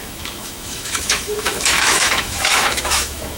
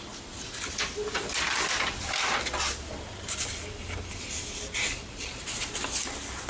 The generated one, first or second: first